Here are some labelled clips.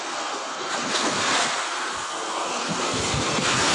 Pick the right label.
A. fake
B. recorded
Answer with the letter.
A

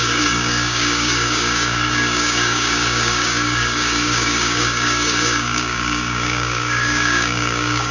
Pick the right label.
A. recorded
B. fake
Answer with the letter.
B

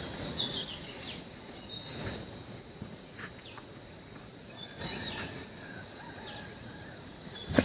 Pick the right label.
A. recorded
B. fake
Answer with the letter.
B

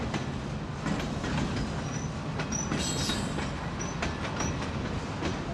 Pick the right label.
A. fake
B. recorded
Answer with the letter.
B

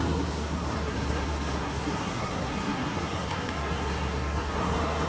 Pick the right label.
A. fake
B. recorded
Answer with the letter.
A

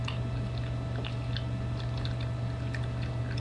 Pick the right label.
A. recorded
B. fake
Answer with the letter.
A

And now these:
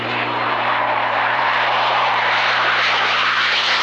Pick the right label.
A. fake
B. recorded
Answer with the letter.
A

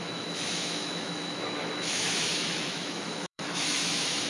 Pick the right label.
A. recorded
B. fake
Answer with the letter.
B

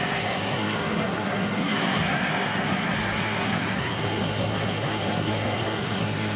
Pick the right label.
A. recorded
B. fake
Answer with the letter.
B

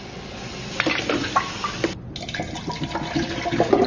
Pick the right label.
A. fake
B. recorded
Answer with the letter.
B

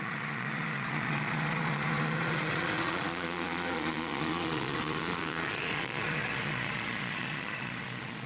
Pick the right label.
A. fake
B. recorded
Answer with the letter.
A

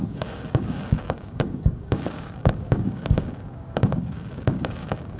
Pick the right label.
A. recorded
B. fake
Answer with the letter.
B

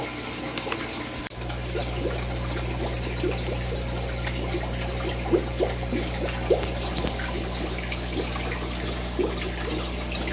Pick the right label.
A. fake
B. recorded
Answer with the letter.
B